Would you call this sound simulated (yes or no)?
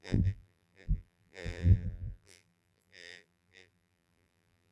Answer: yes